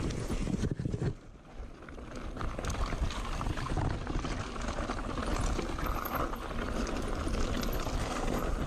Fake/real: real